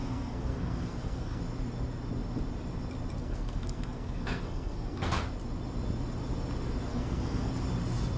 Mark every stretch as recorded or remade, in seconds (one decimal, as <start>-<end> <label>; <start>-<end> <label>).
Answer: 0.0-1.4 remade; 1.4-3.2 recorded; 3.2-5.2 remade; 5.2-6.9 recorded; 6.9-7.5 remade; 7.5-8.2 recorded